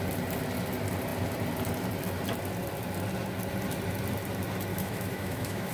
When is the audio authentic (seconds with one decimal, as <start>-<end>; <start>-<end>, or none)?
0.0-4.7